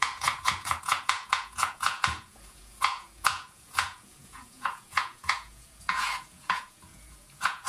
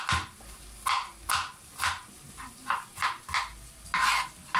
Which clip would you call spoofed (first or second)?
first